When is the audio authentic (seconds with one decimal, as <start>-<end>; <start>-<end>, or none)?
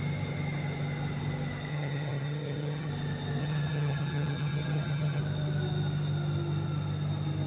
0.0-1.7; 2.9-3.4; 5.2-7.5